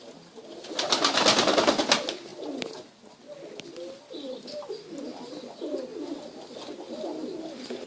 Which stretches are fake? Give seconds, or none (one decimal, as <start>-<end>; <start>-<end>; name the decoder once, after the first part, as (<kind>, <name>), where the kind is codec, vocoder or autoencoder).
2.3-5.0 (vocoder, BigVGAN v2)